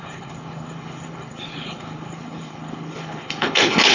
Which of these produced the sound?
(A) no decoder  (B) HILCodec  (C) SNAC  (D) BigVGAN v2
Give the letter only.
B